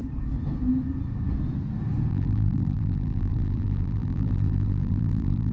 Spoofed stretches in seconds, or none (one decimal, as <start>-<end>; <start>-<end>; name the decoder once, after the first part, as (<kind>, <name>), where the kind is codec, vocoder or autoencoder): 2.1-5.5 (vocoder, BigVGAN v2)